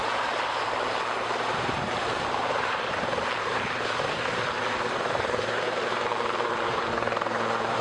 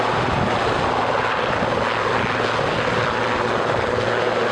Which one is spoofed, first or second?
first